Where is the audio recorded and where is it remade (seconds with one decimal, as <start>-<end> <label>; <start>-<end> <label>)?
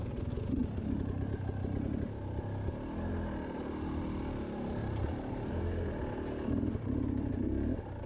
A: 0.0-4.8 recorded; 4.8-7.3 remade; 7.3-8.1 recorded